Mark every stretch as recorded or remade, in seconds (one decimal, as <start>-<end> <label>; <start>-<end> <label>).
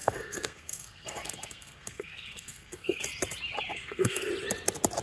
0.0-3.0 remade; 3.0-3.7 recorded; 3.7-4.3 remade; 4.3-5.0 recorded